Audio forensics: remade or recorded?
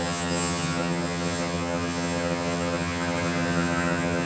remade